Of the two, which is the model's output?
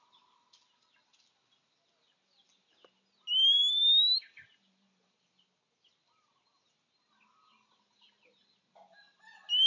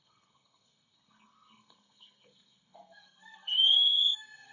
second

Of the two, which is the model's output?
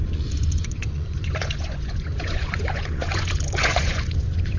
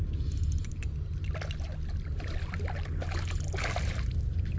first